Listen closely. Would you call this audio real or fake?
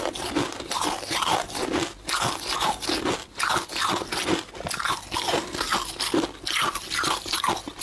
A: real